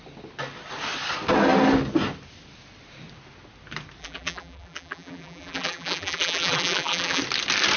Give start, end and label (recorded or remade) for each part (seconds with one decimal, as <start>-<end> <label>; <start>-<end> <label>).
0.0-4.0 recorded; 4.0-7.2 remade; 7.2-7.8 recorded